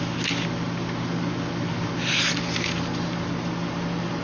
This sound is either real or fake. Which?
real